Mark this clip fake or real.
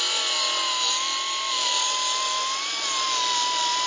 real